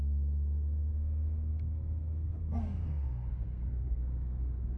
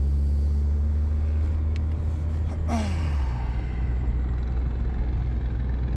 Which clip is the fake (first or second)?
first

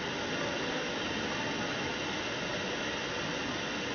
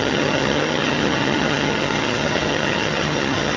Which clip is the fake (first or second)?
second